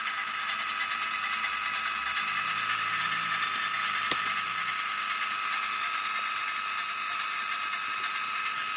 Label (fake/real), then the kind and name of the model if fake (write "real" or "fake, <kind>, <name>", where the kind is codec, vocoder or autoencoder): real